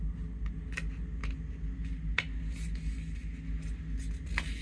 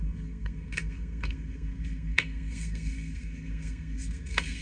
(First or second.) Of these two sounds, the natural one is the first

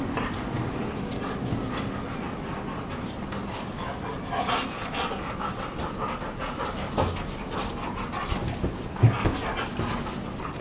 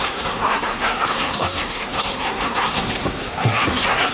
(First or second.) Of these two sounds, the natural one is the first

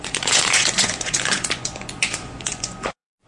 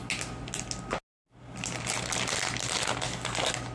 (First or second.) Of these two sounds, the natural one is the second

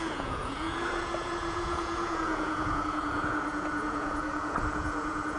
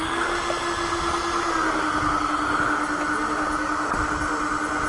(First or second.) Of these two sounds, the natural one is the second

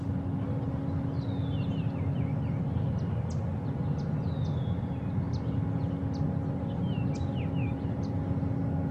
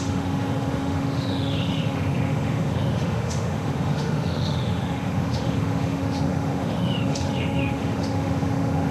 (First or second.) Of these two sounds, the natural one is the first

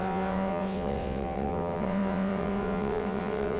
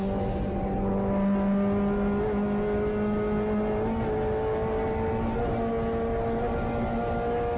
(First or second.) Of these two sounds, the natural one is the second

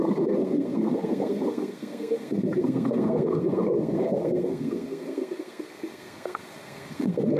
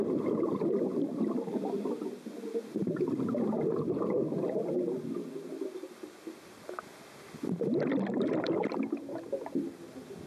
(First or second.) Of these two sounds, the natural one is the second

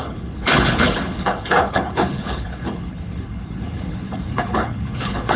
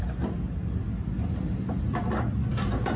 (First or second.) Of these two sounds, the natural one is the second